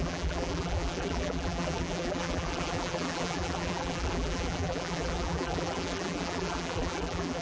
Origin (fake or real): fake